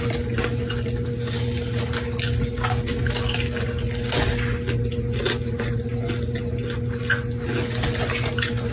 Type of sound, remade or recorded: recorded